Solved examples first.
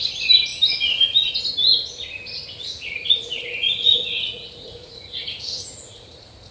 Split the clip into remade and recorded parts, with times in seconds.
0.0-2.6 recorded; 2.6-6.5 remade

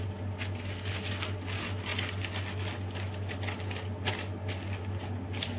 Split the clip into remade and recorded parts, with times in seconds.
0.0-5.6 recorded

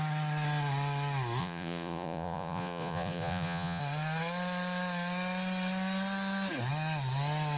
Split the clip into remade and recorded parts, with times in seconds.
0.0-1.4 recorded; 1.4-3.8 remade; 3.8-7.6 recorded

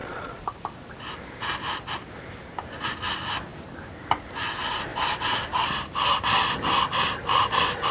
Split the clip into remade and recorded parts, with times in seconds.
0.0-0.5 remade; 0.5-7.9 recorded